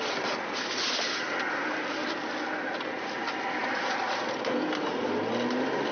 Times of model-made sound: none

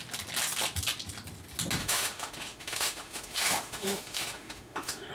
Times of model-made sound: 1.8-5.1

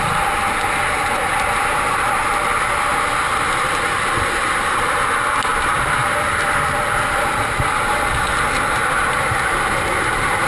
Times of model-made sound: none

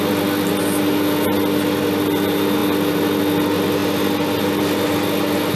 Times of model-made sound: none

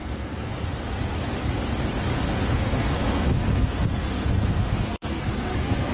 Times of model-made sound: 0.0-0.8; 2.5-5.9

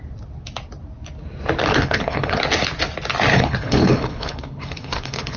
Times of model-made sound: 1.7-2.4; 3.3-5.4

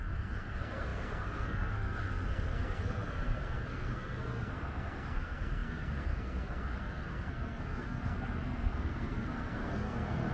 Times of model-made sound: 0.0-10.3

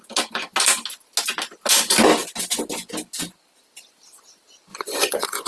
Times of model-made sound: 4.7-5.5